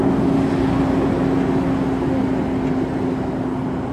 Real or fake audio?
real